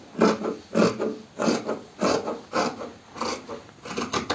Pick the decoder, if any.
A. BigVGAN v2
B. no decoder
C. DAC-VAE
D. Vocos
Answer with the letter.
B